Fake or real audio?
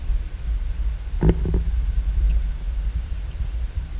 real